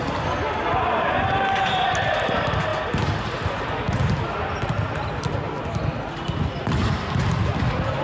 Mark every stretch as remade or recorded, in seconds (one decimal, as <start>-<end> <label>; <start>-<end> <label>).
0.0-8.0 recorded